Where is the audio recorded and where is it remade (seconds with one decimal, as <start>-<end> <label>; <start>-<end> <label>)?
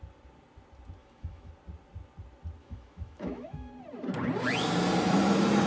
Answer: 0.0-1.0 recorded; 1.0-1.5 remade; 1.5-2.6 recorded; 2.6-3.7 remade; 3.7-5.7 recorded